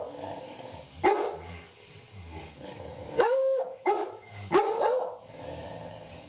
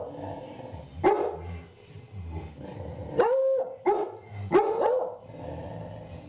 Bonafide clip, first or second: second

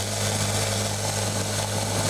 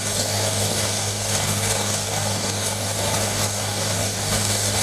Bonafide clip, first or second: first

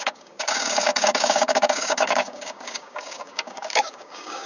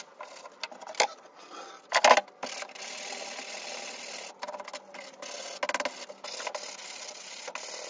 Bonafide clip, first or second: second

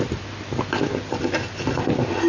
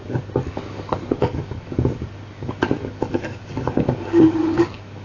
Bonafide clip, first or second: first